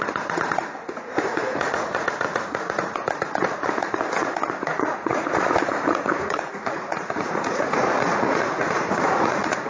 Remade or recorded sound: remade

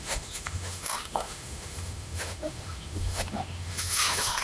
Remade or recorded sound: remade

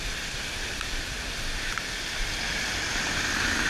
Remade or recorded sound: recorded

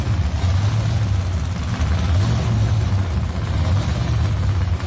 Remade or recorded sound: recorded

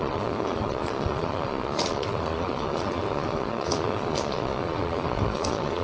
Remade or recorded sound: remade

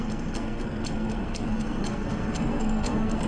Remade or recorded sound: remade